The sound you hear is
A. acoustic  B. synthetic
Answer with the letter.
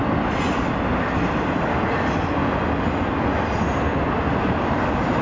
A